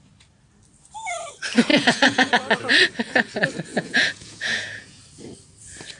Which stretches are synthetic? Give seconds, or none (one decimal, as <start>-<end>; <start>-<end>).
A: 1.7-2.3; 3.7-5.0